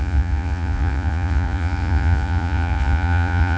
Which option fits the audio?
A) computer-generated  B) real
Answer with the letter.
A